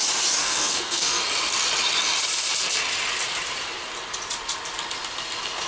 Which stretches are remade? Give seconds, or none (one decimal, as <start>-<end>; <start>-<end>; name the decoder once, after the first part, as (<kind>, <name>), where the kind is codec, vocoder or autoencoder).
0.4-1.2 (codec, SNAC)